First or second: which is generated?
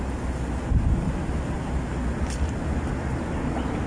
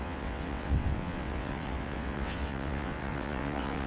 second